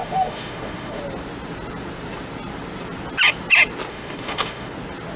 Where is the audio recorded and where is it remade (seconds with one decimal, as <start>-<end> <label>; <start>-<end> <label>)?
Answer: 0.0-1.0 remade; 1.0-3.9 recorded; 3.9-4.7 remade; 4.7-5.2 recorded